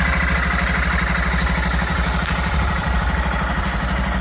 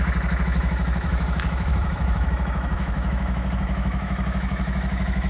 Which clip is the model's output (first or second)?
second